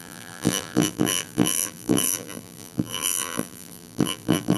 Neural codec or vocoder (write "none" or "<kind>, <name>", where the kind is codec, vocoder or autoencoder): vocoder, BigVGAN v2